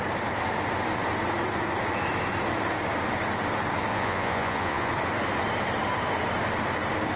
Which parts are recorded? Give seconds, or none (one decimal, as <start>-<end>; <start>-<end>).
0.0-3.9; 4.9-7.2